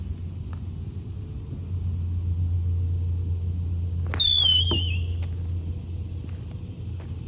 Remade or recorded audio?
recorded